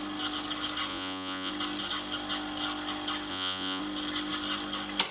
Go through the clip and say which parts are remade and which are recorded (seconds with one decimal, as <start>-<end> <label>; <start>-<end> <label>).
0.0-0.9 recorded; 0.9-1.5 remade; 1.5-3.3 recorded; 3.3-3.8 remade; 3.8-5.1 recorded